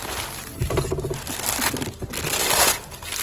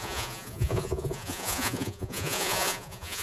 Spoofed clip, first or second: second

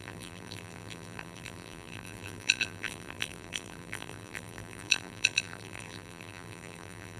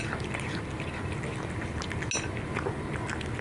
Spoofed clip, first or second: first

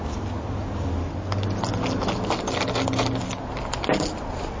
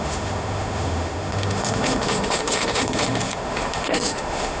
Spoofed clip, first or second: second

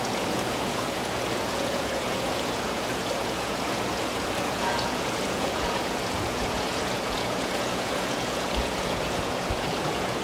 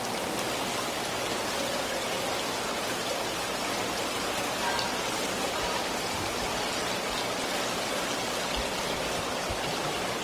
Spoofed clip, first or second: first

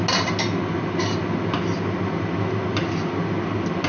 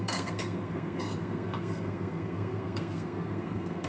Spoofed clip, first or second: second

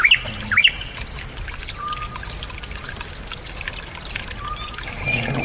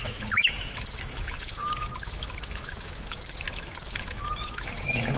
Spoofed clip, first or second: second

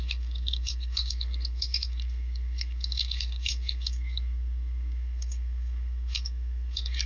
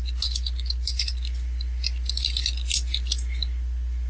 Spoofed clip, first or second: first